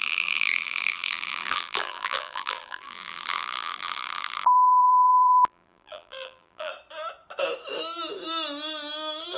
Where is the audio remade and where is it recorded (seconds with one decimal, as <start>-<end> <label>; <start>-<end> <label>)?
0.0-6.7 remade; 6.7-9.4 recorded